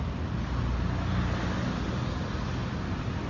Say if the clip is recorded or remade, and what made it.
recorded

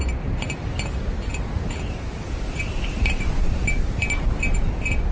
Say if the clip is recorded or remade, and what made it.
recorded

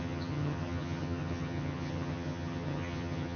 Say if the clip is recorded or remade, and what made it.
remade, vocoder, HiFi-GAN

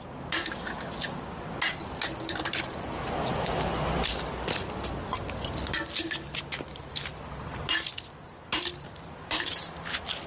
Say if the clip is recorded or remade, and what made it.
recorded